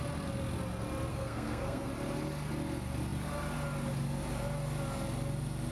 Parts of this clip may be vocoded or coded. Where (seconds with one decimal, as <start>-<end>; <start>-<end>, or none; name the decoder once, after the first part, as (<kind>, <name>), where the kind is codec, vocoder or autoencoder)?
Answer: 1.1-1.9 (codec, SNAC)